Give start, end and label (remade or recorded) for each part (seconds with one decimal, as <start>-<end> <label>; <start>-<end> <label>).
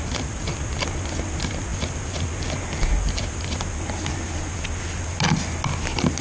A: 0.0-6.2 recorded